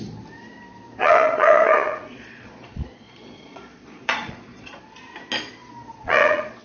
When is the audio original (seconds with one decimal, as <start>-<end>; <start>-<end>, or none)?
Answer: 0.0-1.0; 4.8-5.6

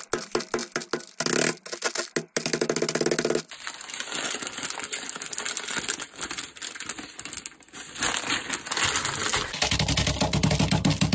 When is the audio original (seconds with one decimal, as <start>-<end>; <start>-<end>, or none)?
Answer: 0.0-11.1

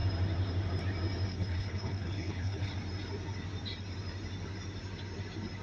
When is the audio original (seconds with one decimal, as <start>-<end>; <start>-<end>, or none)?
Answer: 0.0-1.3; 2.7-5.6

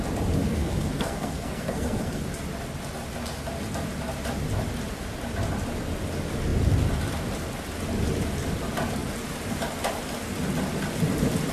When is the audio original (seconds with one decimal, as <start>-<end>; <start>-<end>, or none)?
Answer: 0.0-0.4; 2.2-11.5